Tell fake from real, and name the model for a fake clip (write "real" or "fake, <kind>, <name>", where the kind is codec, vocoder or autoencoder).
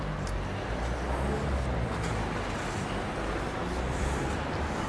real